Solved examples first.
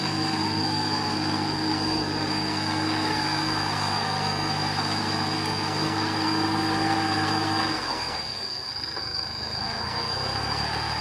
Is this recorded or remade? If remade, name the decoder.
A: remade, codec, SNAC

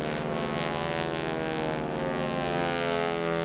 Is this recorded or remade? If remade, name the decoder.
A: recorded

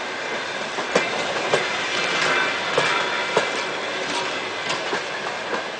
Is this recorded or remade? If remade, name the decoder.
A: recorded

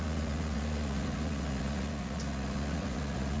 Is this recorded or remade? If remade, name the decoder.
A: remade, vocoder, Vocos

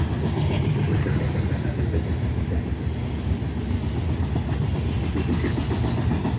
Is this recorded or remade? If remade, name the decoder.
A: recorded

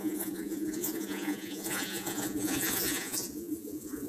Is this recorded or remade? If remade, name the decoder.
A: remade, vocoder, Vocos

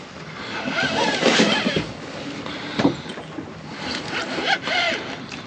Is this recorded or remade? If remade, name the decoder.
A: recorded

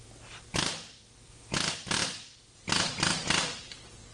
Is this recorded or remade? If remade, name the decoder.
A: recorded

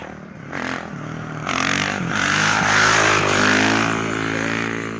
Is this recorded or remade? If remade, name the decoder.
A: recorded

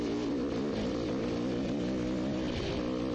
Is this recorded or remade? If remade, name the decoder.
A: recorded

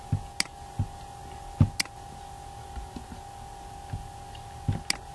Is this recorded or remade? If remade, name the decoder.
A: recorded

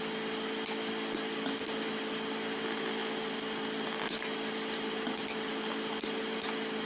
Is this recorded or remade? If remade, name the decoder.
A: recorded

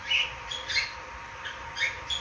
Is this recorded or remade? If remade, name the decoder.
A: recorded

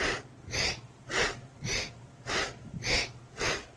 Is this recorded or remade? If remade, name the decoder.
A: recorded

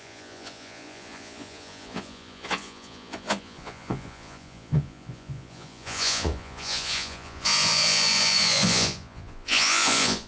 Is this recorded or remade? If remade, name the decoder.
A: remade, vocoder, Vocos